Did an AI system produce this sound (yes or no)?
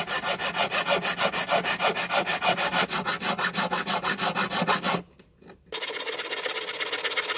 no